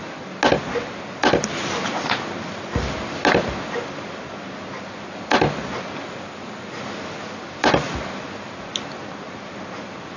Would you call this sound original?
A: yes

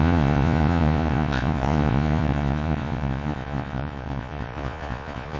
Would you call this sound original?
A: no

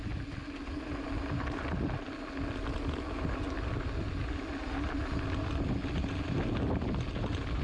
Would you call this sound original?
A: yes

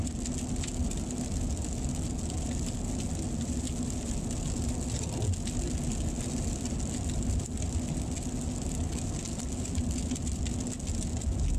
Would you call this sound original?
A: yes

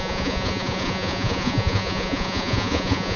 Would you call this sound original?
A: no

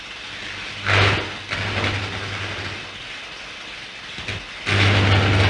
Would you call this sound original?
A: yes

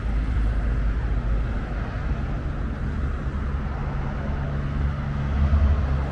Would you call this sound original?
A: yes